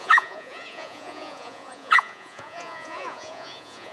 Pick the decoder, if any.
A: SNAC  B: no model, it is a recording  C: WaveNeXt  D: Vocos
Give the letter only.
D